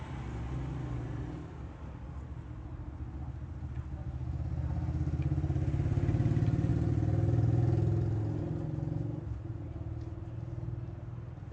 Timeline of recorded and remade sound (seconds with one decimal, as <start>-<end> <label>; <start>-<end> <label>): 0.0-11.5 recorded